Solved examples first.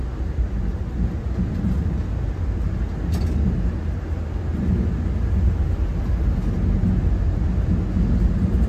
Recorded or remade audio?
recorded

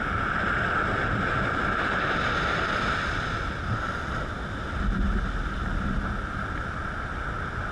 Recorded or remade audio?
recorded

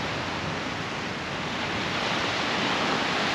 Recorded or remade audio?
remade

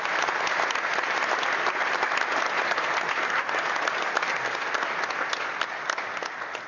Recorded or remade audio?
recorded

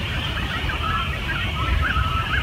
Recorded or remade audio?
remade